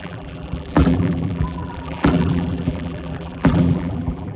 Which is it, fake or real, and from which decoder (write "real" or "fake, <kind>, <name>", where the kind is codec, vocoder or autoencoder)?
fake, vocoder, BigVGAN v2